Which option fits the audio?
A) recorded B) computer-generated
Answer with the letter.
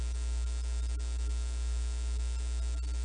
A